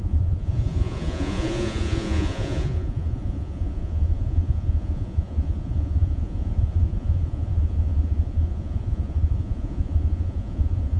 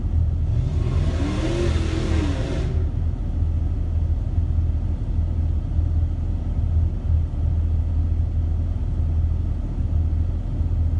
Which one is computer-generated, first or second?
first